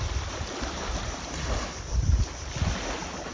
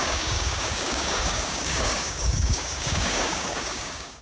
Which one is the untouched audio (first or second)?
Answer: first